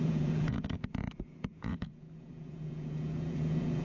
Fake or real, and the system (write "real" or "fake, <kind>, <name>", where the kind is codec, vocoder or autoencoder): fake, vocoder, Vocos